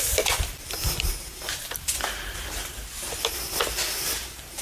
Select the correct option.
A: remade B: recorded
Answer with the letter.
B